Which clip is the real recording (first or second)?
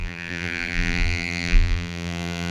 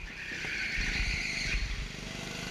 second